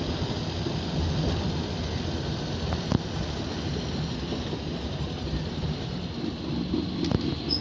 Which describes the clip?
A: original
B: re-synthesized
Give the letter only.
A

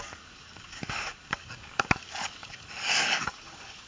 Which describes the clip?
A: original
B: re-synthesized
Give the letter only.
B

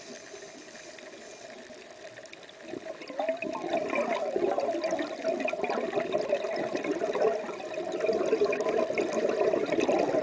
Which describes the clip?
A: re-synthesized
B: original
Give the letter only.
B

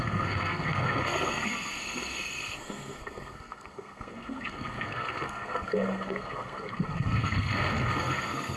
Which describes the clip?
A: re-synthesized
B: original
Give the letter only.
A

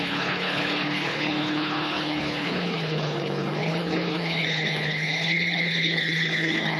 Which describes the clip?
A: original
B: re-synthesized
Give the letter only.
B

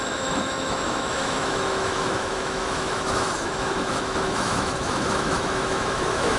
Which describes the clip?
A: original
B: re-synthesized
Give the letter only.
B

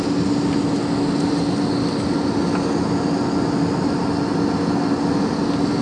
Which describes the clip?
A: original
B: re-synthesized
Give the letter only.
A